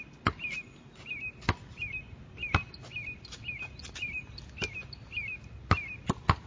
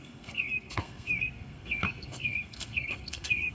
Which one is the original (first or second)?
first